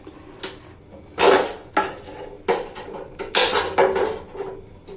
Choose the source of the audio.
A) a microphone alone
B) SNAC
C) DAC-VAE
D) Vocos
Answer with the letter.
A